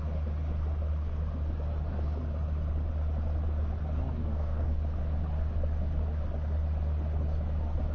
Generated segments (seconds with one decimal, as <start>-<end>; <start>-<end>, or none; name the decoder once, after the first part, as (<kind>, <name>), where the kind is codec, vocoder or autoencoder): 4.2-4.8 (codec, SNAC)